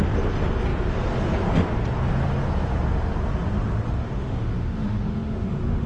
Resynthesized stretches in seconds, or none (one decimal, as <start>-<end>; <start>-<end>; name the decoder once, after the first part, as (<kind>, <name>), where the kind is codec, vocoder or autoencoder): 4.0-5.9 (autoencoder, DAC-VAE)